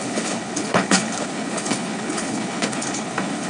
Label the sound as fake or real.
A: fake